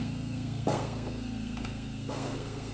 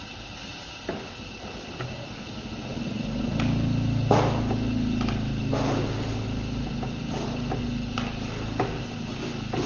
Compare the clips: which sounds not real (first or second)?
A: first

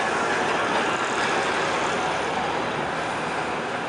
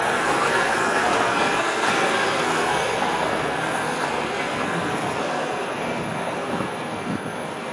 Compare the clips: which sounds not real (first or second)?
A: second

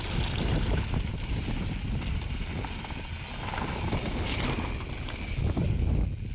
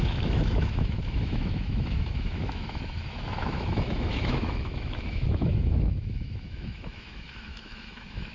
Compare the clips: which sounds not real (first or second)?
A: second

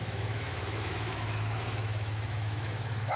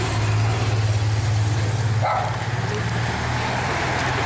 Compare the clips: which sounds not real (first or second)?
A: first